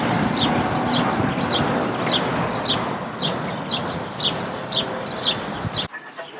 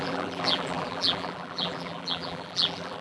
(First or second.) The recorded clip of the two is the first